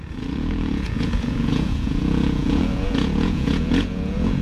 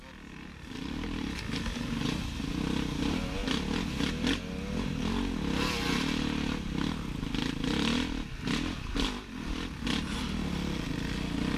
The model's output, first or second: first